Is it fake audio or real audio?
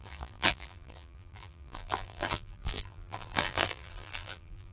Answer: fake